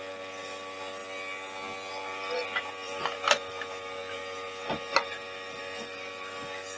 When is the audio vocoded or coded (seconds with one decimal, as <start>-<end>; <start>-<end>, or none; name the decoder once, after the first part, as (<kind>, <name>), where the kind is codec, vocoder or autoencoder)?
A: 0.0-1.0 (vocoder, BigVGAN v2); 1.9-6.8